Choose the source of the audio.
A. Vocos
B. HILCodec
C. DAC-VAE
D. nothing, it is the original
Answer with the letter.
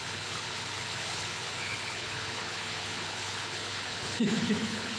B